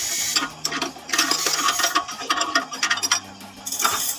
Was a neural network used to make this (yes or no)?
no